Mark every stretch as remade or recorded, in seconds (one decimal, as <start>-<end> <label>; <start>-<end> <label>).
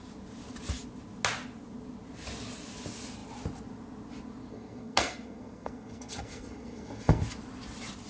0.0-4.5 recorded; 4.5-7.2 remade; 7.2-8.1 recorded